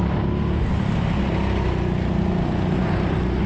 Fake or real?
real